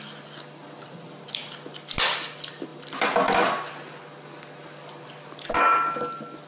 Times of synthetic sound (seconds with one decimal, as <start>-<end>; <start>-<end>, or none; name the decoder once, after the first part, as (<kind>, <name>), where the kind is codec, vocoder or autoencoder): none